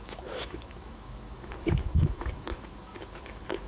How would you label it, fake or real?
fake